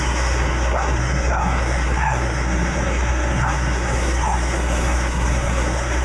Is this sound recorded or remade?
remade